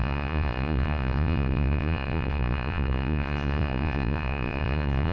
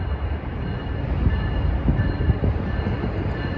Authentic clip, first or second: second